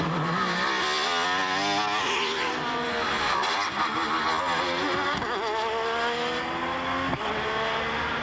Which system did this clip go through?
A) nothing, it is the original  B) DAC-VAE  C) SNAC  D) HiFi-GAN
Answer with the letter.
A